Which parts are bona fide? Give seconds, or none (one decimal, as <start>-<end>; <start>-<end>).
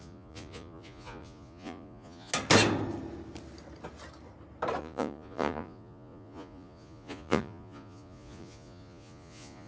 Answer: 2.3-4.8